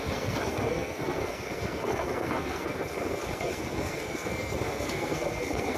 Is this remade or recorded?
remade